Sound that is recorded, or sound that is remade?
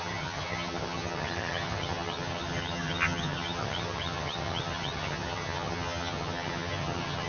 remade